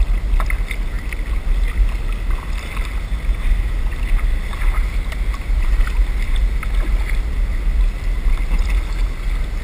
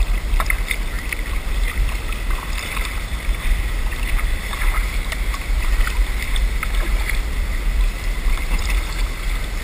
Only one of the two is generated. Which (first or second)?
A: second